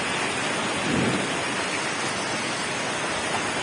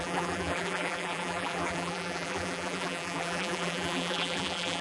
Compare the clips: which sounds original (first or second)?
first